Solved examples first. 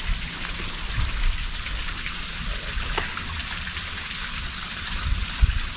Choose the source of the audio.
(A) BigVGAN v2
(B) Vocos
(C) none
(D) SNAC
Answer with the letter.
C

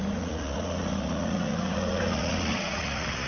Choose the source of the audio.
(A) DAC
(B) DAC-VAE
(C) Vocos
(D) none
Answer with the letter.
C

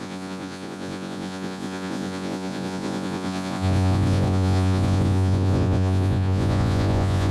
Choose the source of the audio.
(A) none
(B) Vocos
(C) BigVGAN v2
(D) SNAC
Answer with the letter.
B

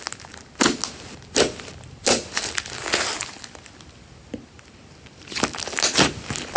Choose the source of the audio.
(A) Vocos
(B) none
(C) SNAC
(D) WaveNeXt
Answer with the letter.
B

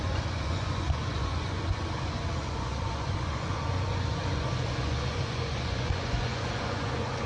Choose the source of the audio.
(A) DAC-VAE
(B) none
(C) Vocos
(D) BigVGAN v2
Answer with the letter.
C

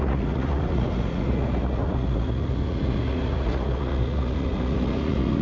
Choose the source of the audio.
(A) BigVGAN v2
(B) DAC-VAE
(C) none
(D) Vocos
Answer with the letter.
D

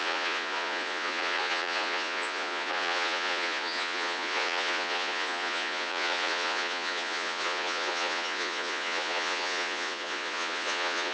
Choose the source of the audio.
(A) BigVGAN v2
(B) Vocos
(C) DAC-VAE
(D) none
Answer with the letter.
B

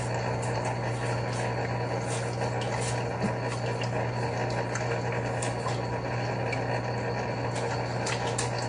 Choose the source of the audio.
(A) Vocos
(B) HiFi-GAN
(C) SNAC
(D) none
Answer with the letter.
D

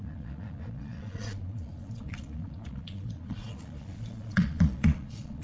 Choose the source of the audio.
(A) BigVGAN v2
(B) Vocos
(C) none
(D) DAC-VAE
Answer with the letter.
B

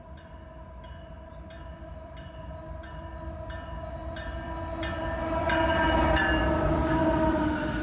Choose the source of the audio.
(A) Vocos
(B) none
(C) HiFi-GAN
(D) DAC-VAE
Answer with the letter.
B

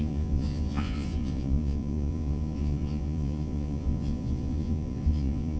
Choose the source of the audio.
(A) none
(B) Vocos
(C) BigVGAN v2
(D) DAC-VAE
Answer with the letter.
B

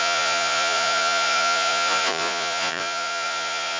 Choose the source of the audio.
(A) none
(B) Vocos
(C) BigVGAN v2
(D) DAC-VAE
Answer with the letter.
B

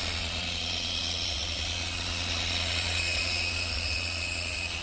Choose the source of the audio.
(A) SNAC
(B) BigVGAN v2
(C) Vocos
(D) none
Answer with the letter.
C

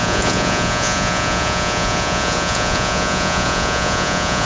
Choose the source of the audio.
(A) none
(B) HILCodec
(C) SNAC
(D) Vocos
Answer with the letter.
D